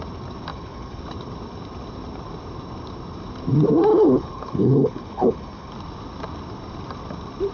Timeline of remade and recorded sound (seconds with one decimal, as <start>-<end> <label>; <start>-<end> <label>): 0.0-0.5 recorded; 0.5-1.0 remade; 1.0-3.9 recorded; 3.9-5.7 remade; 5.7-7.5 recorded

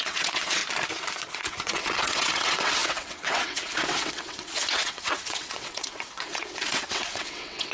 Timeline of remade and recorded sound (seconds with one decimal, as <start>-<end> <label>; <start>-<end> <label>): 0.0-0.6 remade; 0.6-1.3 recorded; 1.3-7.7 remade

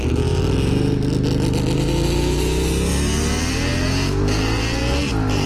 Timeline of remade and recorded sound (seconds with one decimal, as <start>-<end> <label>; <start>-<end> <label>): 0.0-5.5 recorded

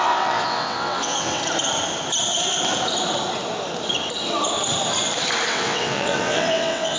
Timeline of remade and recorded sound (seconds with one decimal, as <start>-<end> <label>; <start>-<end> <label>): 0.0-1.4 remade; 1.4-5.5 recorded; 5.5-7.0 remade

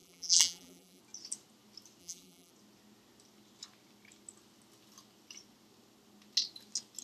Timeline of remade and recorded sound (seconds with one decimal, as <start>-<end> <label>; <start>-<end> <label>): 0.0-1.0 remade; 1.0-2.0 recorded; 2.0-2.5 remade; 2.5-7.0 recorded